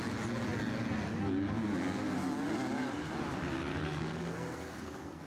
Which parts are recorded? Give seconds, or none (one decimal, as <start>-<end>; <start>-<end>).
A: 0.0-3.7